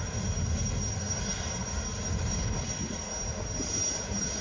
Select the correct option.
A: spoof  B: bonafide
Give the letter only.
B